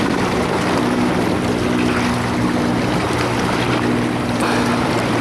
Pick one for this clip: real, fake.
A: real